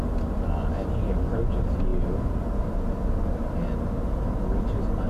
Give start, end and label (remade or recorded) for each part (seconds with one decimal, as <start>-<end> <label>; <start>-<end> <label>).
0.0-5.1 recorded